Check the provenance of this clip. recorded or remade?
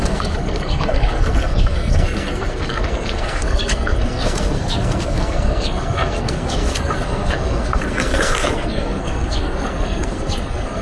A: remade